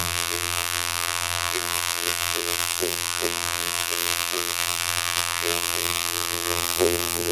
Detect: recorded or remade remade